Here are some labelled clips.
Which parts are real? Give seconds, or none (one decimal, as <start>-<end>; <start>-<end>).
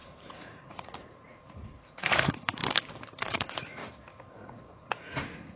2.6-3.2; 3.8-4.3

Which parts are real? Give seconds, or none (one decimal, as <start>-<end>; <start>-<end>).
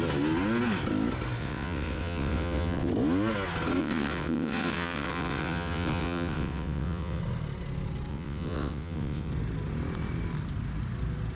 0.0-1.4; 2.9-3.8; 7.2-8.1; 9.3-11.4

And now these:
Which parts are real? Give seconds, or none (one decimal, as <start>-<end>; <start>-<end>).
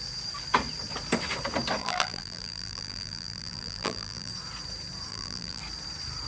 0.0-1.8; 4.3-5.1; 5.6-6.3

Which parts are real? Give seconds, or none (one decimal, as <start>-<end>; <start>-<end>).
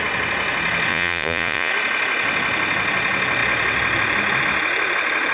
0.0-0.9; 1.7-5.3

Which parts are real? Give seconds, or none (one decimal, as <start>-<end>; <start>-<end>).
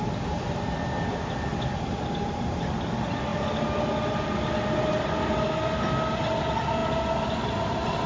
0.0-8.1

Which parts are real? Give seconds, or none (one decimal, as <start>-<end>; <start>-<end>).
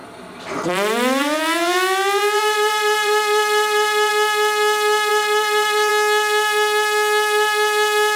4.1-5.1; 5.9-8.2